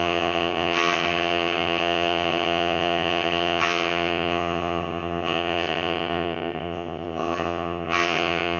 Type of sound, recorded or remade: remade